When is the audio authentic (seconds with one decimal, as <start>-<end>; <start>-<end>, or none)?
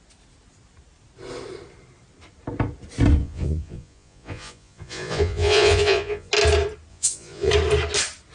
0.0-3.2; 6.3-6.9; 7.5-8.3